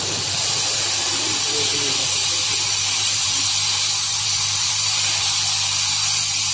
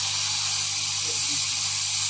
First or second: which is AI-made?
first